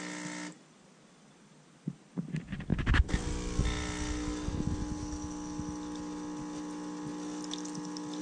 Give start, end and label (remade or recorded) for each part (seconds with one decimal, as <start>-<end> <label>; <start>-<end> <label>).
0.0-8.2 recorded